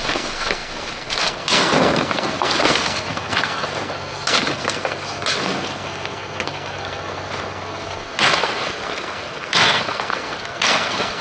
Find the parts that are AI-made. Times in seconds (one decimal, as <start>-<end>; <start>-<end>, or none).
0.0-11.2